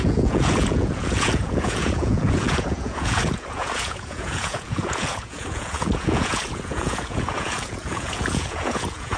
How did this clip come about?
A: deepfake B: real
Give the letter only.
A